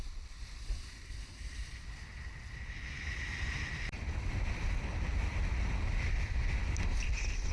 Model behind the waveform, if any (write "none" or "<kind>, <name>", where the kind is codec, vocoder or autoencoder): none